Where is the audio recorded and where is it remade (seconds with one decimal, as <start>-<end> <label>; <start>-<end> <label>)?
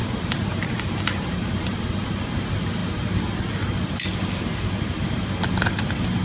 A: 0.0-2.3 remade; 2.3-6.2 recorded